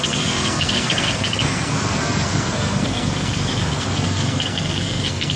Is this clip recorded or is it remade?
remade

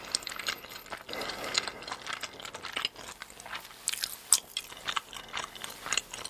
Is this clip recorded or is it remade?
recorded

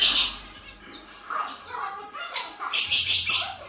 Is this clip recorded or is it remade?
remade